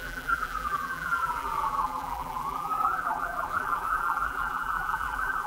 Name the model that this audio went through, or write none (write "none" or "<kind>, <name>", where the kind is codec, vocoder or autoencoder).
vocoder, BigVGAN v2